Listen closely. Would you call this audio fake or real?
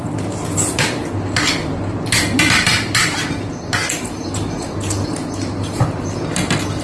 real